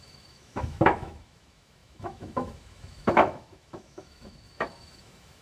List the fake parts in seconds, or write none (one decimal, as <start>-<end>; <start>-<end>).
0.0-5.4